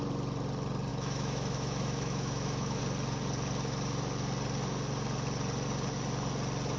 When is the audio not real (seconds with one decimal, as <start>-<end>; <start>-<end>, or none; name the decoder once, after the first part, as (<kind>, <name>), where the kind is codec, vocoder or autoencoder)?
0.9-2.8 (autoencoder, DAC-VAE)